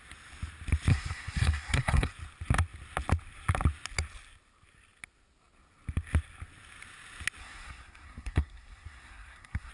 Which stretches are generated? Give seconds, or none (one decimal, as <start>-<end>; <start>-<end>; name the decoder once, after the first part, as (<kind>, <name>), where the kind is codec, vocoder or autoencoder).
0.9-2.1 (codec, SNAC); 7.4-9.7